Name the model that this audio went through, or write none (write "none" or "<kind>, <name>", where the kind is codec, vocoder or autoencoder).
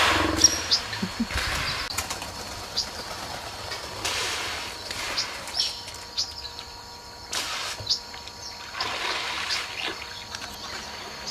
none